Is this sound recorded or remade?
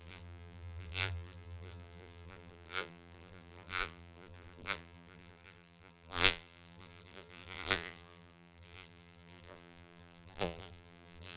remade